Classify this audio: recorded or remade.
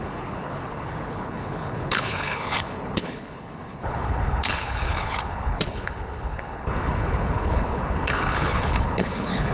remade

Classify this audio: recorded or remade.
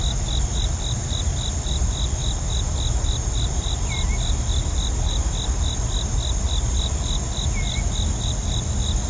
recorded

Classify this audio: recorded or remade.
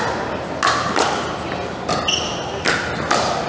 recorded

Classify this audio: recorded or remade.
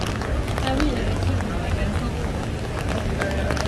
recorded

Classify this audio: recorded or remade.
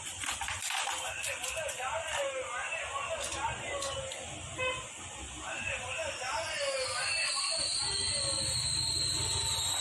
recorded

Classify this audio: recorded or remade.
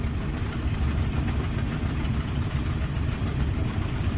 remade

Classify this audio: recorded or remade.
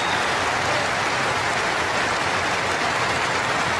recorded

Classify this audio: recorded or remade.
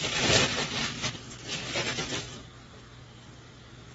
recorded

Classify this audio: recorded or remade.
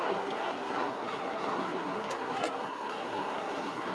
remade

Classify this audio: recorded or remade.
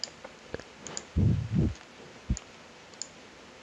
recorded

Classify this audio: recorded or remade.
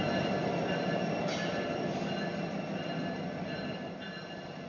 recorded